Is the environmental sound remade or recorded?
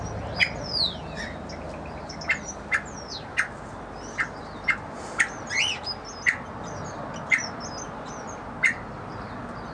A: recorded